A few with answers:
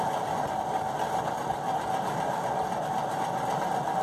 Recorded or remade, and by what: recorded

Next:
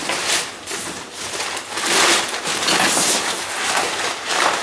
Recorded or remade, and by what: recorded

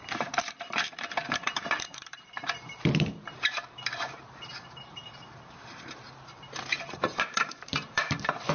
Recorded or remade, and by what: remade, vocoder, BigVGAN v2